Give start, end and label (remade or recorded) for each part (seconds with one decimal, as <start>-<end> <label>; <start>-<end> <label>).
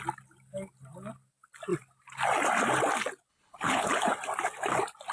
0.0-3.3 recorded; 3.3-3.9 remade; 3.9-5.1 recorded